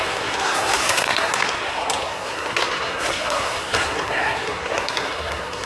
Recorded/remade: remade